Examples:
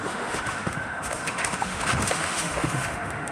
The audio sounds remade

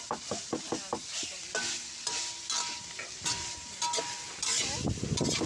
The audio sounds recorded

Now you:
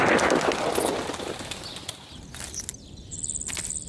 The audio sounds recorded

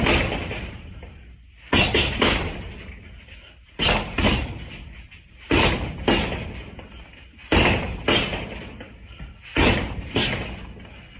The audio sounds remade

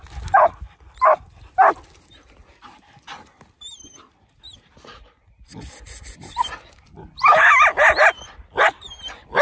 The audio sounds recorded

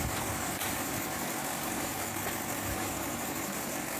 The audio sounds remade